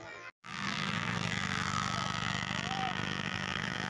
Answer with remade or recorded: remade